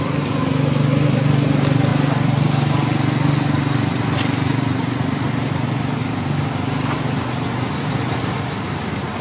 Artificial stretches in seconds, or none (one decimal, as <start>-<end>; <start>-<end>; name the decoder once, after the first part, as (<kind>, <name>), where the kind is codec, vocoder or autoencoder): none

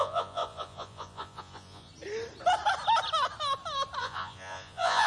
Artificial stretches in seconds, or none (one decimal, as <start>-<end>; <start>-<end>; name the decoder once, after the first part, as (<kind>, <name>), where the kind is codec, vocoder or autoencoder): 0.0-1.9 (vocoder, Vocos); 4.0-5.1

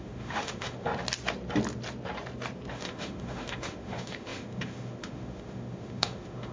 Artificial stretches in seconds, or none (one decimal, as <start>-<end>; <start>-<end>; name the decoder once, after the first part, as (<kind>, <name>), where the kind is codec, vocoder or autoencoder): 0.0-0.9 (autoencoder, DAC-VAE); 2.7-6.5

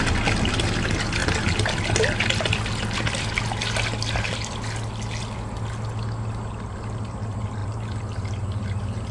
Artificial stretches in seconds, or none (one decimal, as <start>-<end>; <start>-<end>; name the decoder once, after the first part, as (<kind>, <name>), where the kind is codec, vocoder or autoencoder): none

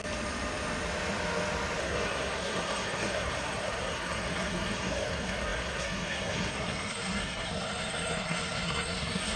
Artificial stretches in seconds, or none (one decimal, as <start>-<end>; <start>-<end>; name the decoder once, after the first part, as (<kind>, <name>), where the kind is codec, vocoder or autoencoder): 1.8-9.4 (codec, SNAC)

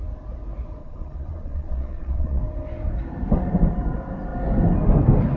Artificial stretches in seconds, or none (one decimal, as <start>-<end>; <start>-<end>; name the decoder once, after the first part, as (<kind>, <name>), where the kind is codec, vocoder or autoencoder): 0.8-2.4 (vocoder, Vocos)